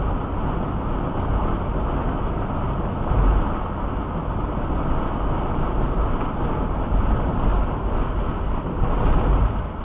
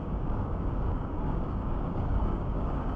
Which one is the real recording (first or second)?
first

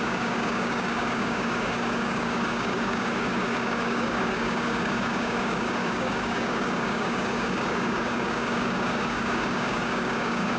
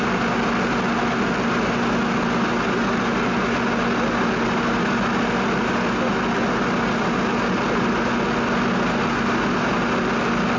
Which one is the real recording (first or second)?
second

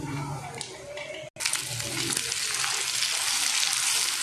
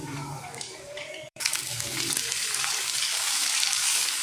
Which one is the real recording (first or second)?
first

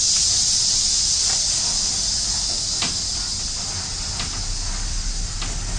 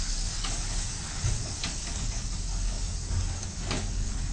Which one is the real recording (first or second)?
first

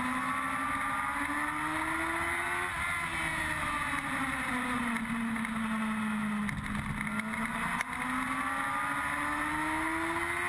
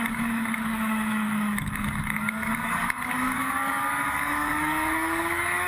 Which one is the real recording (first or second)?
first